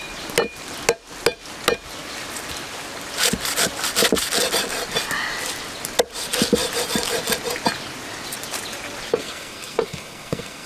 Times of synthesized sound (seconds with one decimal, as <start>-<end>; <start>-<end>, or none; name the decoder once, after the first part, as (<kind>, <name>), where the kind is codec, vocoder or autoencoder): 9.1-10.7 (codec, SNAC)